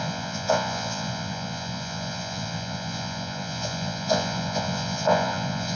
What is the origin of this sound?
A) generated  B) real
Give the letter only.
A